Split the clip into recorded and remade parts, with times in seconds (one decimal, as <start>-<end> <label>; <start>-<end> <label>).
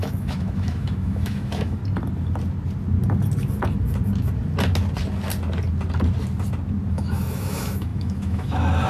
0.0-1.8 remade; 1.8-6.9 recorded; 6.9-8.9 remade